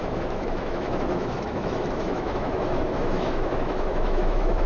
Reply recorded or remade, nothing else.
remade